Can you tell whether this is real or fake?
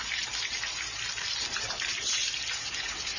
real